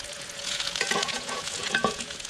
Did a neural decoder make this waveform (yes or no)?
yes